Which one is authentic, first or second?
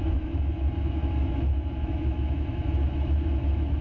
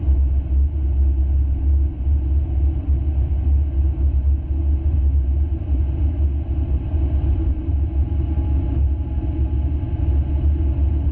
second